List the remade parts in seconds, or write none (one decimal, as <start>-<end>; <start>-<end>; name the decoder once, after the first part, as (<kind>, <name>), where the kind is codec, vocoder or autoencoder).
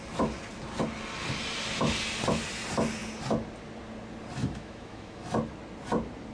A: 4.4-5.2 (autoencoder, DAC-VAE)